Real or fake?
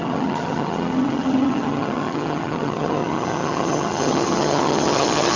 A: fake